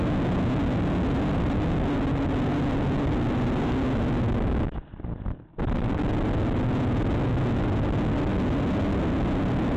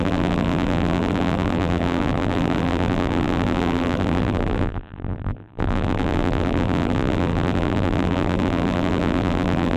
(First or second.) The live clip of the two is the first